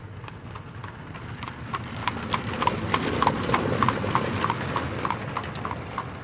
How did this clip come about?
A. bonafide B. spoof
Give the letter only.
A